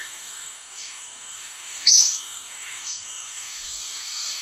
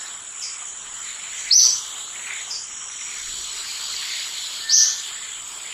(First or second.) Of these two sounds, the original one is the second